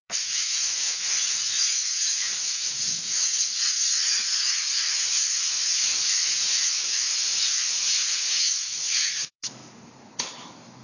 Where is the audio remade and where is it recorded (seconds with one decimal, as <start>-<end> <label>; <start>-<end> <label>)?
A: 0.0-9.6 remade; 9.6-10.2 recorded; 10.2-10.8 remade